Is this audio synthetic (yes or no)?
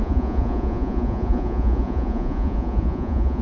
yes